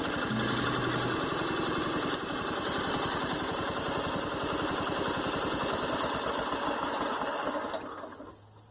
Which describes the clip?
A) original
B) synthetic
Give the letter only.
A